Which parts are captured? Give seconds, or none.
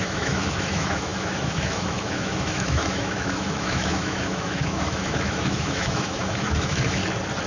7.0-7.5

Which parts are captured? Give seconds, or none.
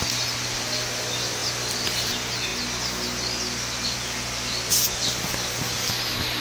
0.0-6.4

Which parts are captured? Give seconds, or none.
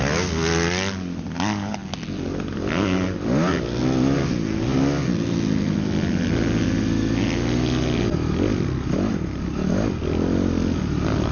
0.0-11.3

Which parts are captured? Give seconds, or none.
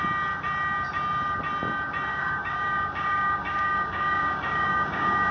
0.0-2.1